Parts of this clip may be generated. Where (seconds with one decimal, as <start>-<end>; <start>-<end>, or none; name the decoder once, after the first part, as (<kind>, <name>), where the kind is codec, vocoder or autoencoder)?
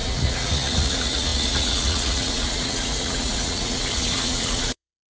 0.0-5.1 (vocoder, Vocos)